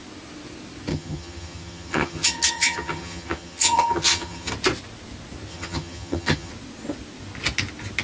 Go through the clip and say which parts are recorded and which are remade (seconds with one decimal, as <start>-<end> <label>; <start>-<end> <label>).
0.0-0.9 recorded; 0.9-4.5 remade; 4.5-5.5 recorded; 5.5-6.5 remade; 6.5-8.0 recorded